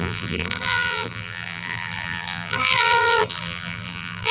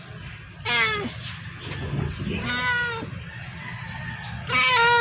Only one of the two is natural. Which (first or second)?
second